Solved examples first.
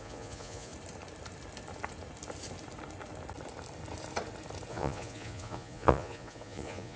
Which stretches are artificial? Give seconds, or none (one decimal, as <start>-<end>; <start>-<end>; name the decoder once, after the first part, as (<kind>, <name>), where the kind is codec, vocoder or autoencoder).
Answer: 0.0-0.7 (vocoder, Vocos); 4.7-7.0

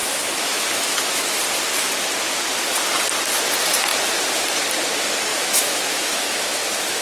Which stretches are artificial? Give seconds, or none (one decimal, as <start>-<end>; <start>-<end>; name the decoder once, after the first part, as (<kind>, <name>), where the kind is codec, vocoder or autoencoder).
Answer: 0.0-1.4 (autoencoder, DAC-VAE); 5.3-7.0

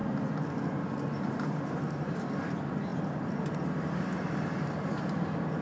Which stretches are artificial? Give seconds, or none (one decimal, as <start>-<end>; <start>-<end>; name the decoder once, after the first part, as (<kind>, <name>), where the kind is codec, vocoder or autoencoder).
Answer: 2.9-3.4 (vocoder, BigVGAN v2)

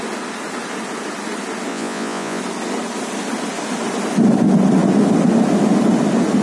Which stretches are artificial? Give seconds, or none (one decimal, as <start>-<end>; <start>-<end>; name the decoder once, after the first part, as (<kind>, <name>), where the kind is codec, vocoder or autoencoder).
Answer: 1.7-2.4 (vocoder, Vocos)

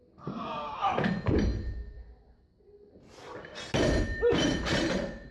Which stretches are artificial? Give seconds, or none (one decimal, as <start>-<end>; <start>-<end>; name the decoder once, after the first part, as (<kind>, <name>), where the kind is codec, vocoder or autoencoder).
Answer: none

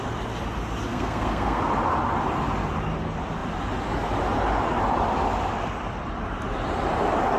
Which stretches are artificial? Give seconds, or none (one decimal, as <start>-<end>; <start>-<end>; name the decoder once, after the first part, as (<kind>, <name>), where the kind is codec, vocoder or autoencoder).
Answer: 0.9-1.6 (codec, SNAC)

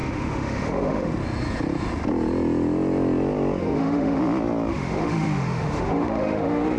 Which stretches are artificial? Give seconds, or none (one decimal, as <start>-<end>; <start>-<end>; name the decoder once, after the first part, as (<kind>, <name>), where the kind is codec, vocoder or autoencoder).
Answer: 0.0-1.1 (autoencoder, DAC-VAE); 3.6-4.2; 4.7-6.8

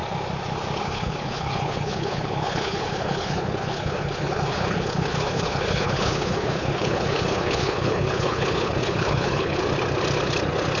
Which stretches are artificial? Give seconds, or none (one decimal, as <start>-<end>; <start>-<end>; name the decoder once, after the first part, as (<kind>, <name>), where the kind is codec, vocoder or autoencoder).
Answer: 0.8-9.6 (codec, HILCodec)